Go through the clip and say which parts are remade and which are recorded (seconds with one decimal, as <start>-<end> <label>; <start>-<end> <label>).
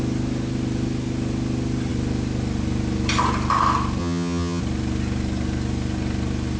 0.0-4.0 recorded; 4.0-4.6 remade; 4.6-6.6 recorded